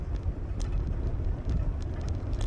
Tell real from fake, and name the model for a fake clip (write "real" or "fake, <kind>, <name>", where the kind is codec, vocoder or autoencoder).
fake, vocoder, BigVGAN v2